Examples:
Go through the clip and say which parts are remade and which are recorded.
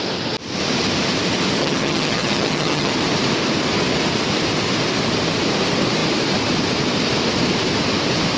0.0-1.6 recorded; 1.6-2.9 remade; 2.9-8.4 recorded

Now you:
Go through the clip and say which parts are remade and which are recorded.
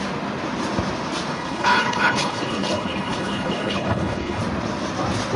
0.0-1.3 recorded; 1.3-4.4 remade; 4.4-5.4 recorded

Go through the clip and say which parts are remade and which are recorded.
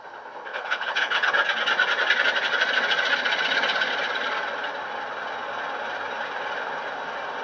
0.0-0.5 recorded; 0.5-1.3 remade; 1.3-7.4 recorded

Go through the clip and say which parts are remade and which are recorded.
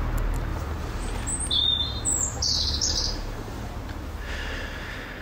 0.0-0.5 recorded; 0.5-1.2 remade; 1.2-1.8 recorded; 1.8-3.7 remade; 3.7-5.2 recorded